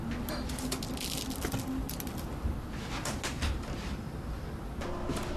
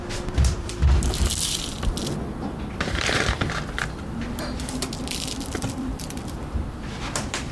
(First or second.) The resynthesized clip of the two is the second